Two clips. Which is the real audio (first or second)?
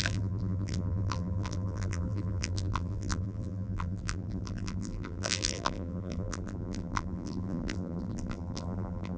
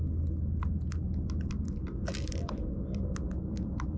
second